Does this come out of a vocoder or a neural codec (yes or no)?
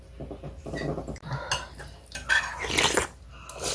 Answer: no